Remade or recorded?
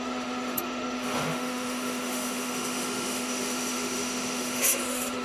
remade